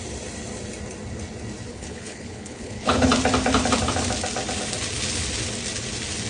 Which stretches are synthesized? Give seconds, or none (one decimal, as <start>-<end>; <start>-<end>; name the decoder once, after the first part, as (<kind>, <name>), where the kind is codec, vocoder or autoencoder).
1.7-3.1 (codec, HILCodec)